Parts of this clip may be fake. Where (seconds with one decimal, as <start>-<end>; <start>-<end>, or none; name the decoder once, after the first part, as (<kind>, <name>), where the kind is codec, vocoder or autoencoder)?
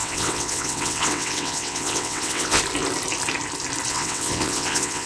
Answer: 0.0-2.6 (vocoder, WaveNeXt); 3.9-5.1